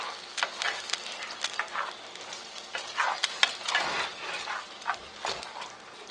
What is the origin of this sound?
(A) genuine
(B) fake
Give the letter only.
A